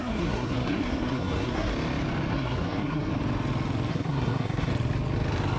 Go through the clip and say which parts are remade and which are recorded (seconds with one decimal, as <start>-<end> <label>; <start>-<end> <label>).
0.0-1.7 remade; 1.7-2.3 recorded; 2.3-3.1 remade; 3.1-3.9 recorded; 3.9-4.7 remade; 4.7-5.6 recorded